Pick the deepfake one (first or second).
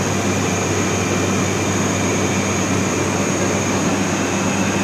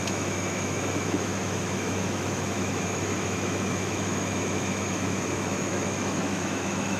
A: second